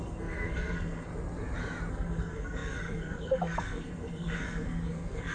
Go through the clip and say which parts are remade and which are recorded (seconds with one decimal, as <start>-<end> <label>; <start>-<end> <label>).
0.0-1.1 remade; 1.1-1.9 recorded; 1.9-5.3 remade